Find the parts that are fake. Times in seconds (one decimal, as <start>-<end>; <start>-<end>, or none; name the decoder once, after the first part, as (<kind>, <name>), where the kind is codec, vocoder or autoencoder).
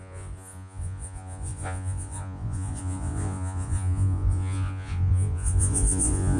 0.0-6.4 (vocoder, Vocos)